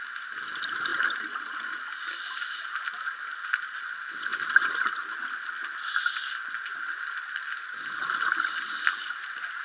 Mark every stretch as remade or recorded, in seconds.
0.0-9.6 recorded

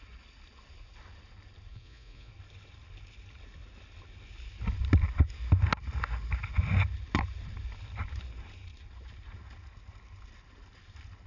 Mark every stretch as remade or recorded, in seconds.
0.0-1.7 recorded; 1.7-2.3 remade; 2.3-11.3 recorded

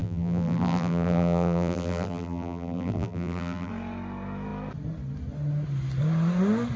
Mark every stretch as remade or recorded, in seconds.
0.0-3.7 remade; 3.7-6.8 recorded